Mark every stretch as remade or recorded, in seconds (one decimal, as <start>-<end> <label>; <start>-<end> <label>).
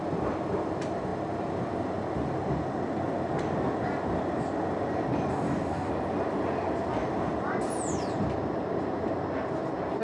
0.0-5.3 recorded; 5.3-5.9 remade; 5.9-10.0 recorded